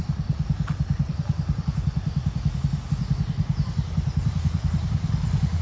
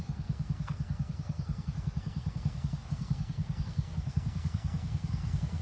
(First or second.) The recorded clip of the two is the first